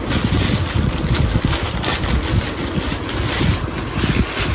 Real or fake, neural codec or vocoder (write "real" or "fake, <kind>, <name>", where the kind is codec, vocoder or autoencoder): real